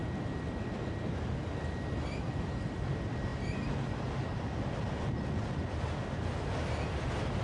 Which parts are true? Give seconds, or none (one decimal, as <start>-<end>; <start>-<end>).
0.0-7.4